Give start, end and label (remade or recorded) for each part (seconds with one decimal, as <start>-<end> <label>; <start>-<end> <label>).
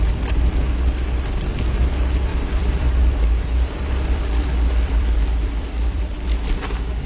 0.0-2.3 recorded; 2.3-6.6 remade; 6.6-7.1 recorded